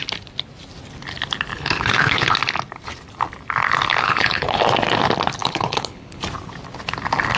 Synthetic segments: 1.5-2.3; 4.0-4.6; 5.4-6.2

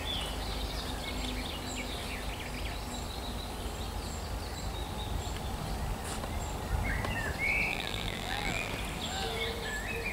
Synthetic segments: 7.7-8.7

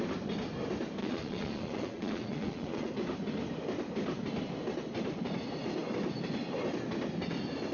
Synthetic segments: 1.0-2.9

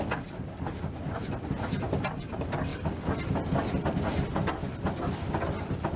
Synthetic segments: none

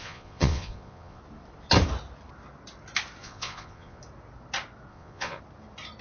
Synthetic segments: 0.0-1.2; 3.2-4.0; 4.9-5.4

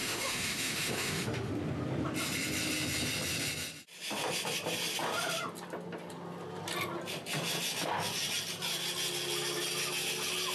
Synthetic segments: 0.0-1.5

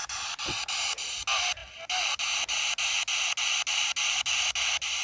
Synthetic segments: none